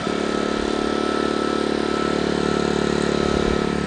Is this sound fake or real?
real